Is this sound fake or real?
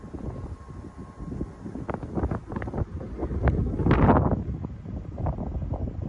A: real